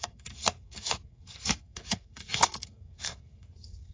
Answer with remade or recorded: remade